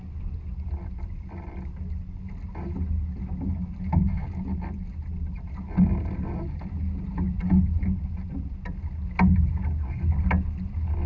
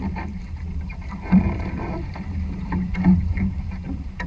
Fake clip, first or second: second